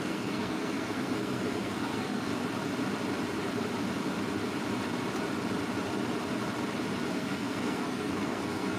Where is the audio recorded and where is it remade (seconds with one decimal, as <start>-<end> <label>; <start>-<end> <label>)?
0.0-2.3 remade; 2.3-7.1 recorded; 7.1-8.8 remade